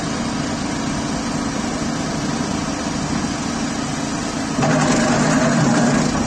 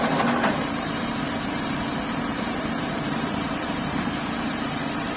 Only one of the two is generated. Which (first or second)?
second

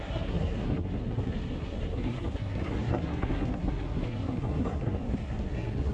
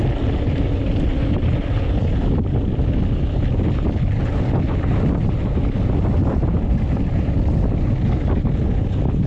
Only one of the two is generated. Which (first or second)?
first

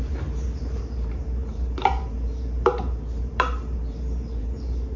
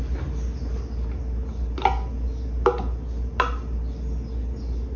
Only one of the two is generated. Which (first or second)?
first